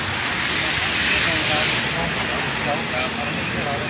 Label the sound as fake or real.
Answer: real